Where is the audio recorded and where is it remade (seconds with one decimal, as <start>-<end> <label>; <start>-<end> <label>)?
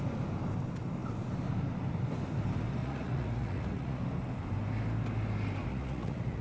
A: 0.0-2.8 recorded; 2.8-4.0 remade; 4.0-5.7 recorded; 5.7-6.4 remade